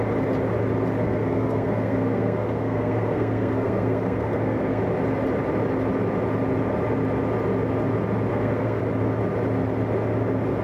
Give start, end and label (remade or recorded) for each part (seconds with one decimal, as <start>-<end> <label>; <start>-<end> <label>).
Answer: 0.0-1.0 recorded; 1.0-4.8 remade; 4.8-8.3 recorded; 8.3-8.8 remade; 8.8-10.6 recorded